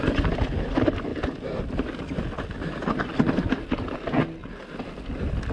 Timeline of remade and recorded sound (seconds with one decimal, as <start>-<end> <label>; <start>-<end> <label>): 0.0-5.5 recorded